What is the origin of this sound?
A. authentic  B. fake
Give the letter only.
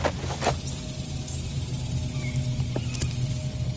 A